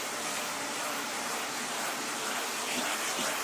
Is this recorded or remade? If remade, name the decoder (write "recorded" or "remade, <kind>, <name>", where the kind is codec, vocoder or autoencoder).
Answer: remade, vocoder, BigVGAN v2